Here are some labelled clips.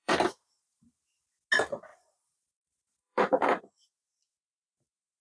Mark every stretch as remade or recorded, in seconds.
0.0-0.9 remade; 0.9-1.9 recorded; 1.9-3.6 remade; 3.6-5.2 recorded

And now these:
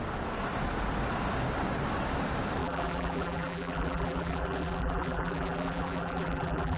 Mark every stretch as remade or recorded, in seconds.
0.0-2.6 recorded; 2.6-6.8 remade

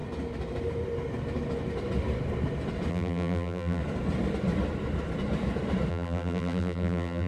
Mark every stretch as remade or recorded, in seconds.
0.0-2.9 recorded; 2.9-3.8 remade; 3.8-5.9 recorded; 5.9-7.3 remade

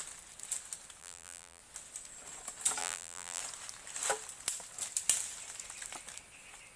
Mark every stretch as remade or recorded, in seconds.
0.0-1.0 recorded; 1.0-1.6 remade; 1.6-2.8 recorded; 2.8-3.4 remade; 3.4-6.8 recorded

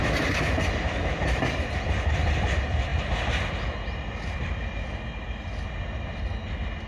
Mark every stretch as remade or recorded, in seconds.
0.0-6.9 recorded

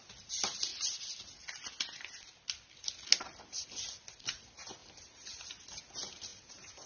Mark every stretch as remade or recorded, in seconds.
0.0-6.3 recorded; 6.3-6.9 remade

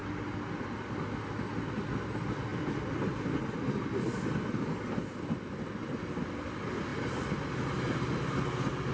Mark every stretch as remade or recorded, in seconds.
0.0-2.5 recorded; 2.5-6.0 remade; 6.0-8.9 recorded

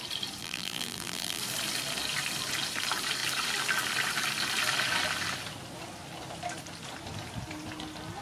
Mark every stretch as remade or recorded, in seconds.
0.0-0.4 recorded; 0.4-1.4 remade; 1.4-8.2 recorded